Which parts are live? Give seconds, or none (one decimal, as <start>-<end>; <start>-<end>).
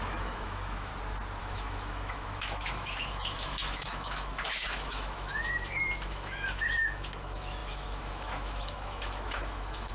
0.9-1.4